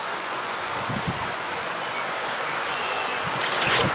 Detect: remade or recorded remade